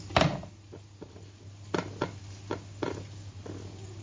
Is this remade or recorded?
recorded